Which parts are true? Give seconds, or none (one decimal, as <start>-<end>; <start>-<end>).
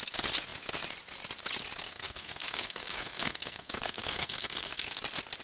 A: 0.0-1.8; 5.0-5.4